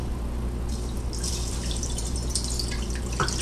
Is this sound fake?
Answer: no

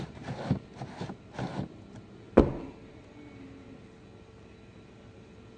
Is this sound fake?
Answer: no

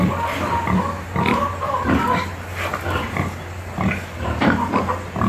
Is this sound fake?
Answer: no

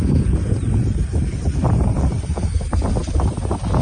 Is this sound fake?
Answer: no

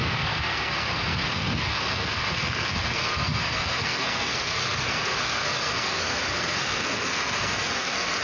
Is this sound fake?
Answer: yes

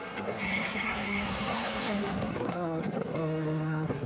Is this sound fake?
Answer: yes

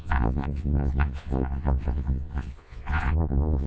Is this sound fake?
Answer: yes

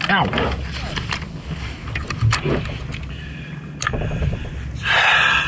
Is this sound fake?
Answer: no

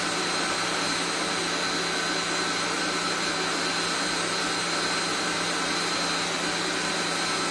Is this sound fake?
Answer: no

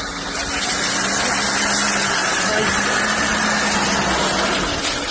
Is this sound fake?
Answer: no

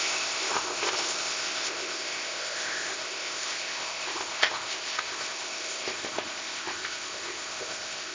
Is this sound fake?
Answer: yes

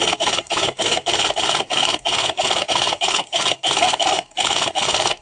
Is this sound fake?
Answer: yes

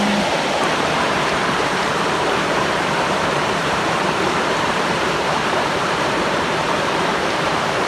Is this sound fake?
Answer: yes